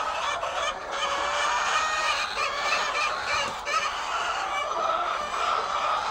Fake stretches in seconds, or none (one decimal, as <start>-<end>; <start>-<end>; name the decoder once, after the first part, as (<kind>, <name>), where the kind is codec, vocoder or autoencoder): none